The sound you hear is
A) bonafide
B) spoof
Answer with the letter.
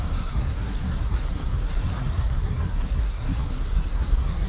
B